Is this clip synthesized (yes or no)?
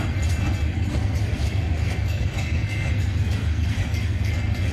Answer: yes